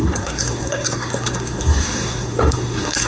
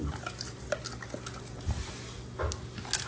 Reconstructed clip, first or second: first